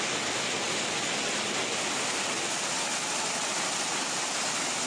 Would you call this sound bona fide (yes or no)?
yes